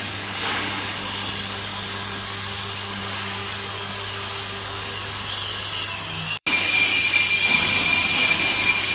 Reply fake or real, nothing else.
fake